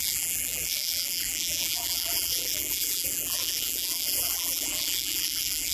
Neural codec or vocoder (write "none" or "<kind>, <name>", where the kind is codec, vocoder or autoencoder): vocoder, BigVGAN v2